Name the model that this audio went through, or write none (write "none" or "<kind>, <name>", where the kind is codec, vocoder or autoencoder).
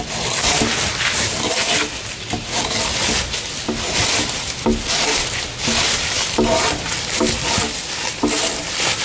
none